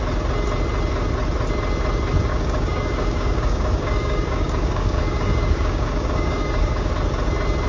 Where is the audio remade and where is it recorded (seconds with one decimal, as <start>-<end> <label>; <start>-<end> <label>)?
0.0-2.3 recorded; 2.3-6.9 remade; 6.9-7.7 recorded